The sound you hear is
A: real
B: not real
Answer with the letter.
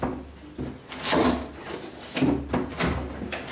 A